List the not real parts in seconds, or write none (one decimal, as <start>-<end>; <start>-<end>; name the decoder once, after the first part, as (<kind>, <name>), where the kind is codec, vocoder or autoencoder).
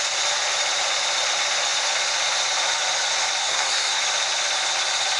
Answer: 3.4-4.0 (codec, SNAC)